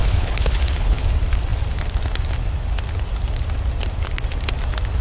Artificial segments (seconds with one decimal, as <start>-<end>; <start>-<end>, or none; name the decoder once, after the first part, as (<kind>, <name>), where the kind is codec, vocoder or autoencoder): 0.0-1.0 (codec, HILCodec)